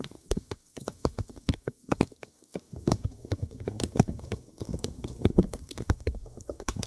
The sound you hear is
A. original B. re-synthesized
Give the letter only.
B